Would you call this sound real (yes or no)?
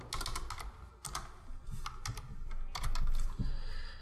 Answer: yes